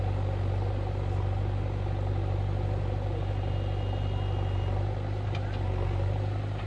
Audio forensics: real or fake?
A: real